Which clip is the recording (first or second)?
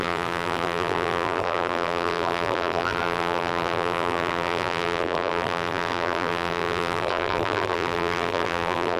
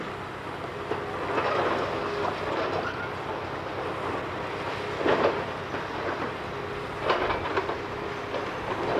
second